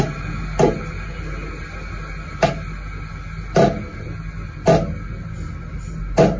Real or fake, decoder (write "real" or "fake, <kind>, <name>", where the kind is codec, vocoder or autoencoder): real